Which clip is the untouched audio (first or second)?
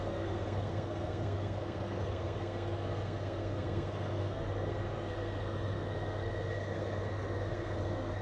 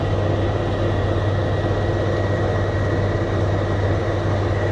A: second